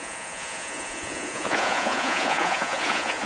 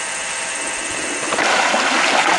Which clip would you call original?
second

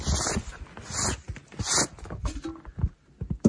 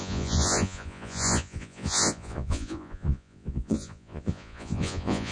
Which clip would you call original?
first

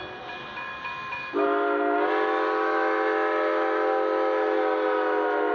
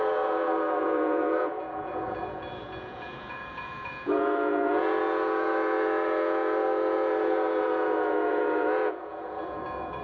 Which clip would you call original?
first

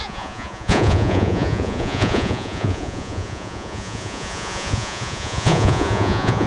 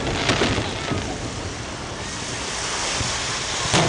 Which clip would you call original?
second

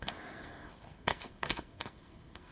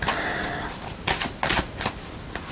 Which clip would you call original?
second